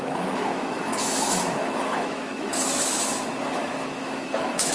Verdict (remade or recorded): remade